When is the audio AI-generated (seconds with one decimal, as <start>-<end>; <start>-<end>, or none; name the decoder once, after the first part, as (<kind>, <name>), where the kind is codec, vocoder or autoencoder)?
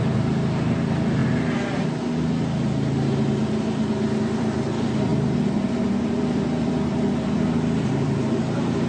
0.0-1.2 (vocoder, BigVGAN v2); 4.2-5.1; 5.7-8.9